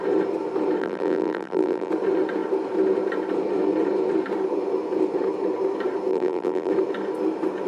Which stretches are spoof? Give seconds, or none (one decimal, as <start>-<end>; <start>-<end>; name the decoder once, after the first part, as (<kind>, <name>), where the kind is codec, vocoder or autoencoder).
0.8-1.9 (vocoder, BigVGAN v2); 6.1-6.7